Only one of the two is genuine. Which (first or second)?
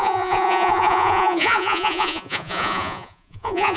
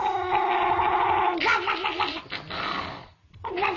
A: second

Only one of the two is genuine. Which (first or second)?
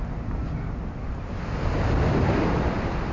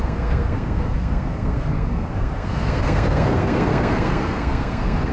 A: first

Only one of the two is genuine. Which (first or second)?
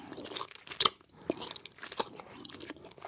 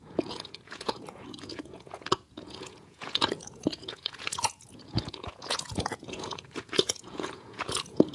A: first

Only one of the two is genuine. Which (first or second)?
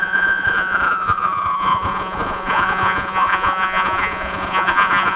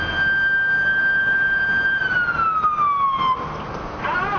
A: second